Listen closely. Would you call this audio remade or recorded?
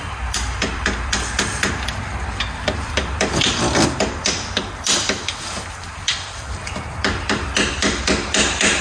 remade